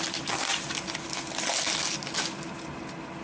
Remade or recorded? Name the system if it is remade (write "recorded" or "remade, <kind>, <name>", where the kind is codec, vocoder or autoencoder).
recorded